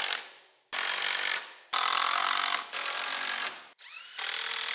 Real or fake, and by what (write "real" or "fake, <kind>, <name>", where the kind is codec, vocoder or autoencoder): real